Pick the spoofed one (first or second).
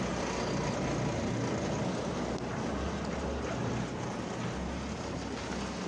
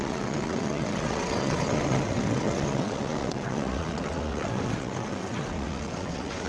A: second